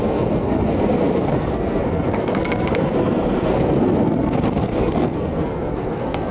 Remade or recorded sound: remade